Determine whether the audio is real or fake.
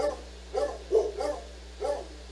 real